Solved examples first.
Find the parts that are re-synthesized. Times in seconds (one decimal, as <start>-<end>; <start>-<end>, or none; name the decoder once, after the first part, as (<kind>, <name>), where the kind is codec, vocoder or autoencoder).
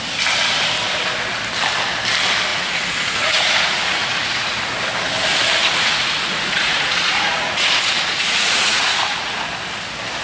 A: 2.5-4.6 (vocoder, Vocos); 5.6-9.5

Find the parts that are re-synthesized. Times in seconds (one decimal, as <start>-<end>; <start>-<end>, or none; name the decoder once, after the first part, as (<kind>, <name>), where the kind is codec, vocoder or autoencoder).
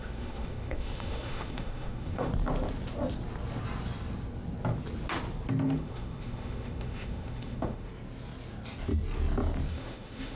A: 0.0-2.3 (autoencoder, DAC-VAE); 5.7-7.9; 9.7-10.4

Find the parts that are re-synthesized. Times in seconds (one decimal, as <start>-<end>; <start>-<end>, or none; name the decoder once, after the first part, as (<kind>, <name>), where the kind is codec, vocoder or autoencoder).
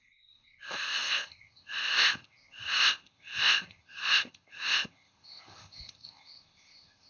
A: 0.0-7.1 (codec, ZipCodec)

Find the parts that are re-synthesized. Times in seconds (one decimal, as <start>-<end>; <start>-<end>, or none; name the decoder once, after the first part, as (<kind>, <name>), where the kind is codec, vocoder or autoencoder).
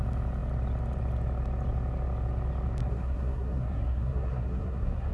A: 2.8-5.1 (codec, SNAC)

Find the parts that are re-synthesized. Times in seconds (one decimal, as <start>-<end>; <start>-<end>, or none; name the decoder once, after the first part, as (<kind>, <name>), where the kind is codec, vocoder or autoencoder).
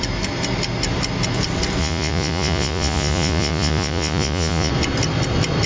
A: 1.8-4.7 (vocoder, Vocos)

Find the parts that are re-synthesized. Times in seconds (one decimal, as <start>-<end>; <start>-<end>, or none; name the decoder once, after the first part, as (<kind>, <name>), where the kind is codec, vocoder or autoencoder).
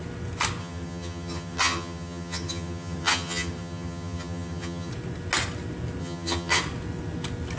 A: 0.6-4.9 (vocoder, HiFi-GAN); 6.0-6.6